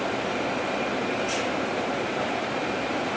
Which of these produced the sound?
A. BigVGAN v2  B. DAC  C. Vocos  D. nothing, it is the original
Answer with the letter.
D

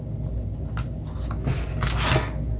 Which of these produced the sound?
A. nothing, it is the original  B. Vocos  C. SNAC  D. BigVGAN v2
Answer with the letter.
A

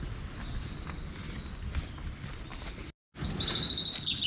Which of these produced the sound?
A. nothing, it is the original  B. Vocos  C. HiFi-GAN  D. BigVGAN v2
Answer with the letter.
A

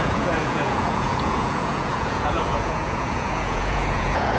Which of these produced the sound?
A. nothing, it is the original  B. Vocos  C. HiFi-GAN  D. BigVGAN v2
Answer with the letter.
B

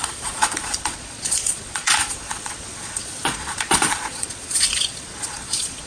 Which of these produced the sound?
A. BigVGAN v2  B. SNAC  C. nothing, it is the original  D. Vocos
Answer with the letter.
D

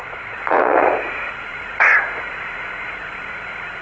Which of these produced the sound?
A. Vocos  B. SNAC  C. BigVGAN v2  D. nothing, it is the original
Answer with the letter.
A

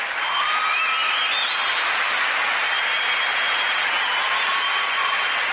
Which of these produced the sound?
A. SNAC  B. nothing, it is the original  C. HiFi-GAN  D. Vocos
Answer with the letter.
B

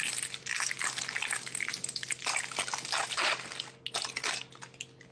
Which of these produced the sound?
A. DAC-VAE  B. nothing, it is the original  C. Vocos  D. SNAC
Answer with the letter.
B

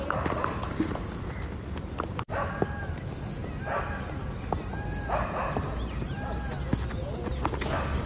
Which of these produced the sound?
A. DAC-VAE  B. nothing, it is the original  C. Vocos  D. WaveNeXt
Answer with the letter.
B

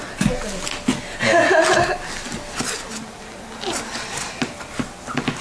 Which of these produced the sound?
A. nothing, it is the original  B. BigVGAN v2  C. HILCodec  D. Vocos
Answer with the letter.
A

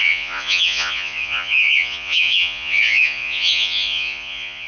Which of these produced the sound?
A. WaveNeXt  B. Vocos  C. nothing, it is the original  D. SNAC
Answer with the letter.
B